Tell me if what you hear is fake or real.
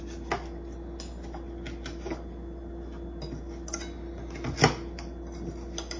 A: real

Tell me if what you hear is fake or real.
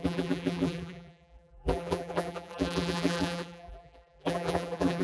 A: fake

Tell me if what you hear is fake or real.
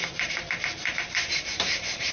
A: fake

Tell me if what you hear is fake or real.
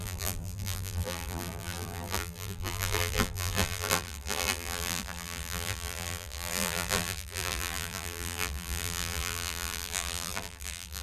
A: fake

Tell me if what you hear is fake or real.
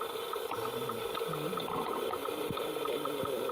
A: real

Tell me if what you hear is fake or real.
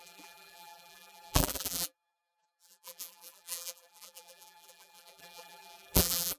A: fake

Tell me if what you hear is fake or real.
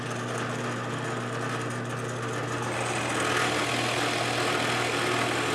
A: real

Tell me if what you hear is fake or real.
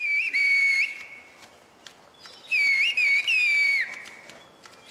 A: real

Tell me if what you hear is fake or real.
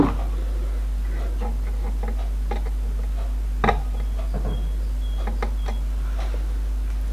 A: real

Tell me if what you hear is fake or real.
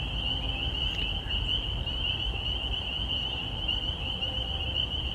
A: real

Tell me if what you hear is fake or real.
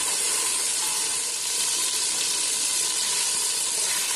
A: fake